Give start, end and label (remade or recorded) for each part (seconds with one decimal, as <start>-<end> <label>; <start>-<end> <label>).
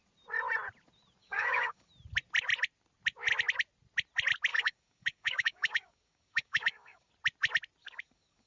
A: 0.0-1.2 recorded; 1.2-1.9 remade; 1.9-4.5 recorded; 4.5-7.1 remade; 7.1-7.8 recorded; 7.8-8.5 remade